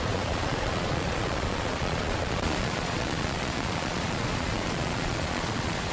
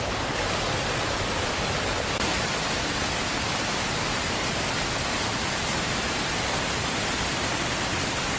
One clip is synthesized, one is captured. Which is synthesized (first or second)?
first